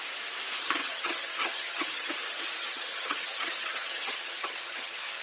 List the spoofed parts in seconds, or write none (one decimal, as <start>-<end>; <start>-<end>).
0.8-2.1; 2.6-5.2